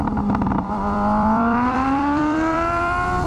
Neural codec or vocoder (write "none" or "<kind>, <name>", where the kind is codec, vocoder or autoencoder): vocoder, BigVGAN v2